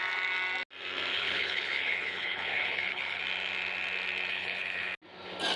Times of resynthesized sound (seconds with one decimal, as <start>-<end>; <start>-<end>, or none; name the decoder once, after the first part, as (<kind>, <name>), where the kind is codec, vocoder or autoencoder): 1.1-3.2 (codec, HILCodec); 4.3-4.9